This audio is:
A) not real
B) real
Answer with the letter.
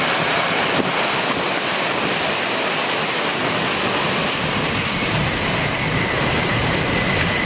B